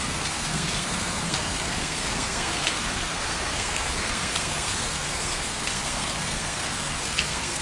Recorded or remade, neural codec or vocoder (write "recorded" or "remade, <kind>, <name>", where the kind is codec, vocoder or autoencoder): remade, codec, SNAC